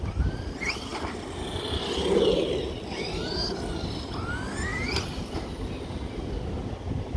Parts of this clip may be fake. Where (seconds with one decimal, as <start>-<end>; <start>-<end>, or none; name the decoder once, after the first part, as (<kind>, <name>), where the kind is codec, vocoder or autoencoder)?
none